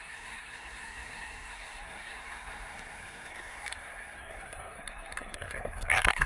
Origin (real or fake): fake